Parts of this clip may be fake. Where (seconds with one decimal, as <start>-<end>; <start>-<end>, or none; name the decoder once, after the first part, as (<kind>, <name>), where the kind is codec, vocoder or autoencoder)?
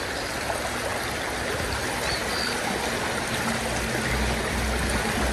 none